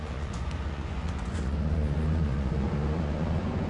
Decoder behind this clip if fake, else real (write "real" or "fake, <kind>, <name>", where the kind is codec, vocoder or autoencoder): fake, vocoder, Vocos